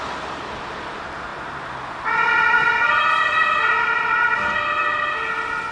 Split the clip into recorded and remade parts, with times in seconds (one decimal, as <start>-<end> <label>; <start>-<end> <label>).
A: 0.0-5.7 recorded